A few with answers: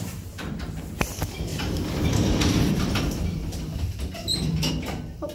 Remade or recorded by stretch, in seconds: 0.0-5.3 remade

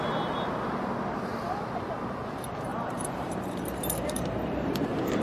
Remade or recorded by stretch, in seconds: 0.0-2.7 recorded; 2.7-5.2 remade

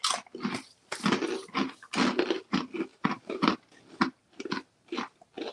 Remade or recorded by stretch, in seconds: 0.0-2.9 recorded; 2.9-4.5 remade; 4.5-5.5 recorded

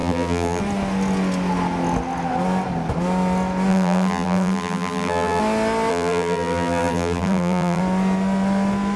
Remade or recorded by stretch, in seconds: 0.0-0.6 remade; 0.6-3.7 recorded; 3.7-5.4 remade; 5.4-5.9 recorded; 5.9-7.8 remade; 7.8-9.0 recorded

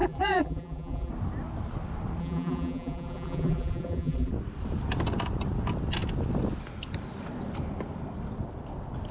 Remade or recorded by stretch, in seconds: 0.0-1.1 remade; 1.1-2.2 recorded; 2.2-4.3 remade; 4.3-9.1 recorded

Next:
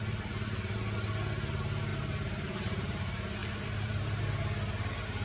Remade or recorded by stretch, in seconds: 0.0-1.9 recorded; 1.9-3.0 remade; 3.0-3.4 recorded; 3.4-4.2 remade; 4.2-5.2 recorded

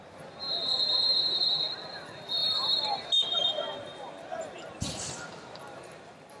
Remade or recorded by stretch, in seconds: 0.0-2.4 recorded; 2.4-6.4 remade

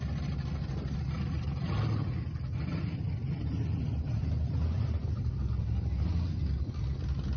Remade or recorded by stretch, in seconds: 0.0-3.2 recorded; 3.2-5.3 remade; 5.3-7.4 recorded